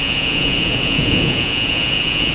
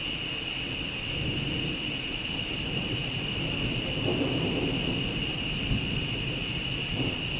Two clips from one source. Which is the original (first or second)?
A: second